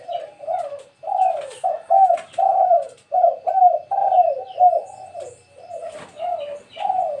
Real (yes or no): yes